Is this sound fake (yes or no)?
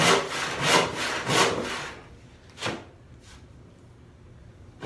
no